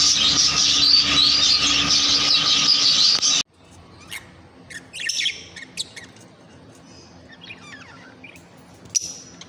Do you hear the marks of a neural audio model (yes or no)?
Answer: no